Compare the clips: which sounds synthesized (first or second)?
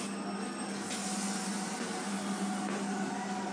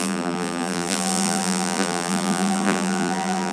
second